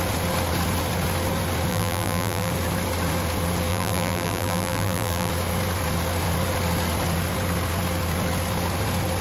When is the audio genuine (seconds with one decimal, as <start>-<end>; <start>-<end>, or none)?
0.0-1.7; 2.5-3.7; 5.3-9.2